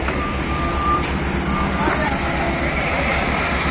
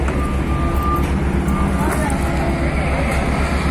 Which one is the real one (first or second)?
second